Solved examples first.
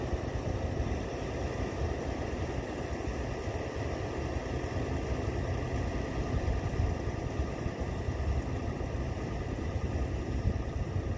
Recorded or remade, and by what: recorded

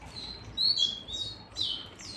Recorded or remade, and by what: recorded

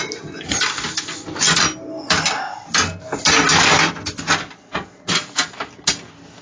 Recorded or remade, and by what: recorded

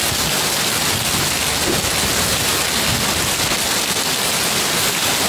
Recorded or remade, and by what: recorded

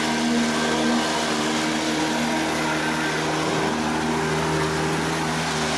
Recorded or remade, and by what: recorded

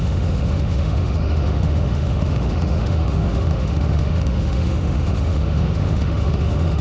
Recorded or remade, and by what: remade, autoencoder, DAC-VAE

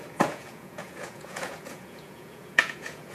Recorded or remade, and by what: remade, vocoder, Vocos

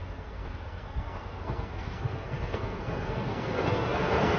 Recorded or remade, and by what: remade, codec, SNAC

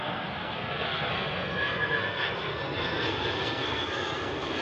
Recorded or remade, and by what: remade, codec, SNAC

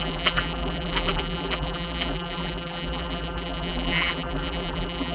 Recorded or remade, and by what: remade, vocoder, BigVGAN v2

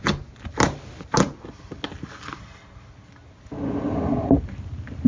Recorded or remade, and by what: recorded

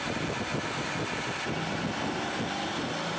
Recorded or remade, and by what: recorded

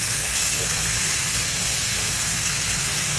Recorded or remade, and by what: remade, codec, SNAC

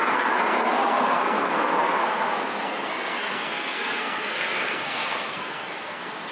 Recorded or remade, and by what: remade, codec, SNAC